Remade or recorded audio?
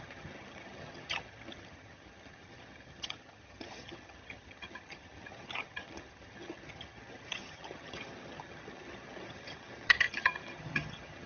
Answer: remade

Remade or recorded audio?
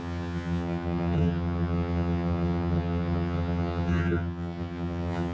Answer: remade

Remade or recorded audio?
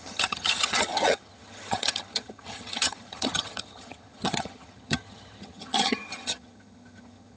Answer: remade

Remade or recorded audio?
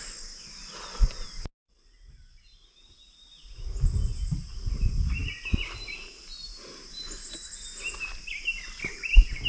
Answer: recorded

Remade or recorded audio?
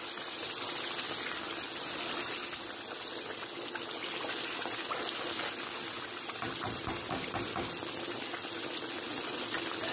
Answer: recorded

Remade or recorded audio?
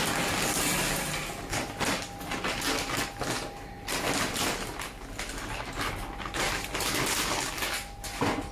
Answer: recorded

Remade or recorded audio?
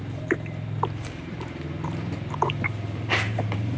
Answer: remade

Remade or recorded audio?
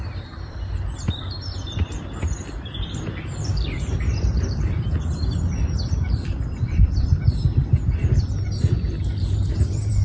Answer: remade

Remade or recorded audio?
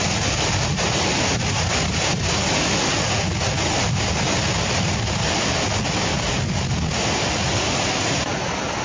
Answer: recorded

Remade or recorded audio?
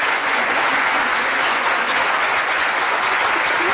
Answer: remade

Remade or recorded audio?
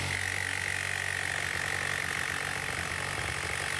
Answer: recorded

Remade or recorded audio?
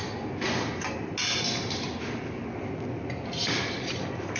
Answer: recorded